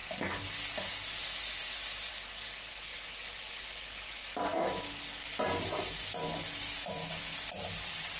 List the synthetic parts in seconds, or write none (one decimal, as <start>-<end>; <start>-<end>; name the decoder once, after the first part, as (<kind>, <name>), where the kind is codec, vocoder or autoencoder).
none